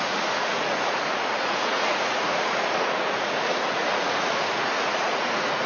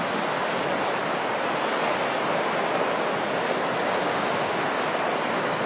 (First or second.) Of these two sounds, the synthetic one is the first